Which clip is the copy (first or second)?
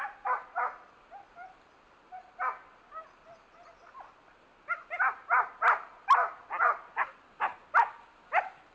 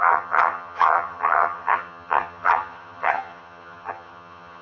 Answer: second